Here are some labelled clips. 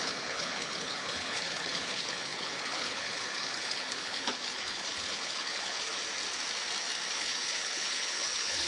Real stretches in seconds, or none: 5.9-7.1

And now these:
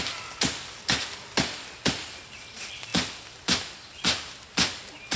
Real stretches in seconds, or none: 0.0-5.2